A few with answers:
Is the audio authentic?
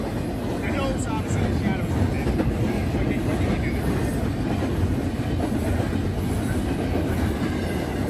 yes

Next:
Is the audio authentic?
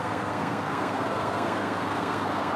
no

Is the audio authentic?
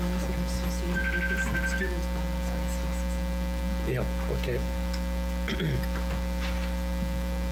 yes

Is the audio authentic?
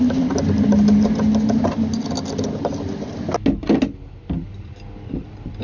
yes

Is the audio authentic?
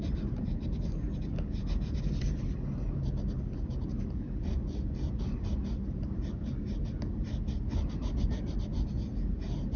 yes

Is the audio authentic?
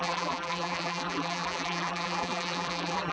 no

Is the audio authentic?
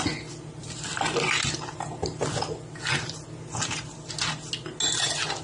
yes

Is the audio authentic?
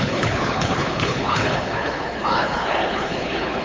no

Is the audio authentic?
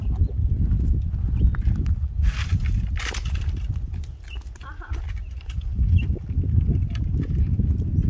yes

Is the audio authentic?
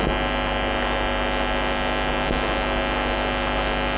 yes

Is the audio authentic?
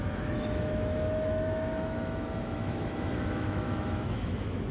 no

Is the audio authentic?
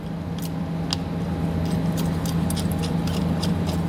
yes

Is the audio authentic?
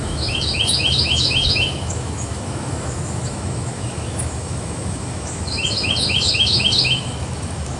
no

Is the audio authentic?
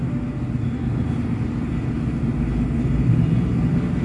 yes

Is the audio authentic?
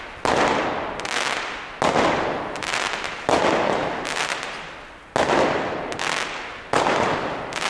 yes